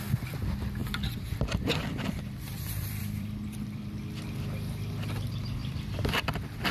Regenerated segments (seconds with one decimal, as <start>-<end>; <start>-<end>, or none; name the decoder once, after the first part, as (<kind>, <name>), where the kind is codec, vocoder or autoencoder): 0.8-4.0 (vocoder, BigVGAN v2); 5.6-6.7